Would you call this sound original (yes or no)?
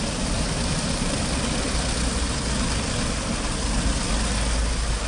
yes